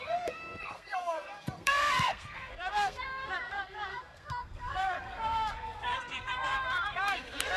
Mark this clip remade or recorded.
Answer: remade